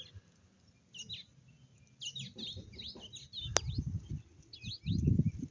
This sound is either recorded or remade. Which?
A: recorded